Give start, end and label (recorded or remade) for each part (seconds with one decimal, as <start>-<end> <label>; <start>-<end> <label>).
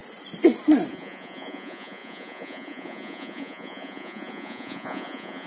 0.0-0.9 recorded; 0.9-5.5 remade